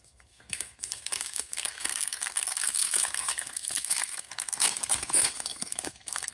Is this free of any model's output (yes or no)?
no